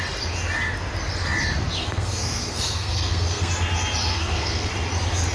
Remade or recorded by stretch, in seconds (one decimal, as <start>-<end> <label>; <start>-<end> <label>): 0.0-1.8 recorded; 1.8-3.5 remade; 3.5-4.1 recorded; 4.1-4.7 remade; 4.7-5.3 recorded